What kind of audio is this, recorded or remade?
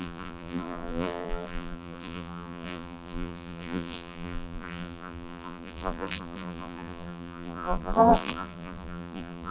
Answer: remade